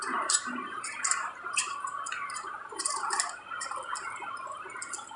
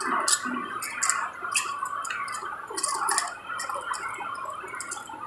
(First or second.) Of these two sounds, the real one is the second